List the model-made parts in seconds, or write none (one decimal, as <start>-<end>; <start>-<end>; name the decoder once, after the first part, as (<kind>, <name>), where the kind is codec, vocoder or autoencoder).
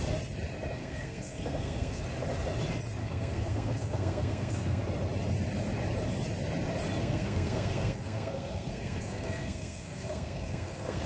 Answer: 0.8-2.0 (codec, SNAC); 3.0-4.8; 7.0-11.1